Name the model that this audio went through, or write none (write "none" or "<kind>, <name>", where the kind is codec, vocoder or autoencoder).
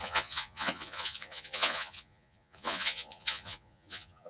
vocoder, Vocos